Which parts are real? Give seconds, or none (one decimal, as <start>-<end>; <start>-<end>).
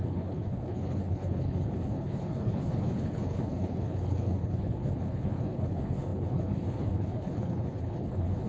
none